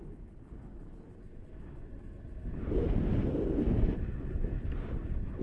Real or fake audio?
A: real